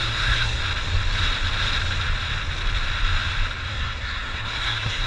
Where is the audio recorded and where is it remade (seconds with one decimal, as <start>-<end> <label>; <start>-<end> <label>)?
0.0-0.6 remade; 0.6-3.7 recorded; 3.7-5.1 remade